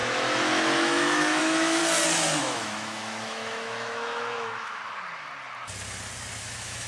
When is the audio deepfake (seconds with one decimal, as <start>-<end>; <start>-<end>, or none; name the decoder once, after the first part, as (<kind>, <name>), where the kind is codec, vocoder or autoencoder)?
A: 0.0-1.8 (autoencoder, DAC-VAE); 2.4-4.8; 6.4-6.9